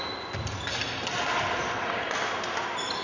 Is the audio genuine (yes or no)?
yes